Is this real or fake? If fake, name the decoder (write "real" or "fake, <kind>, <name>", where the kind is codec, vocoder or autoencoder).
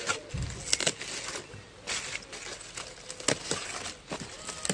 real